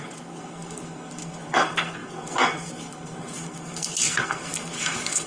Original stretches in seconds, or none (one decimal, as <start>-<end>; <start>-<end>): none